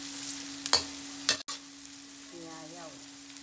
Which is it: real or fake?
real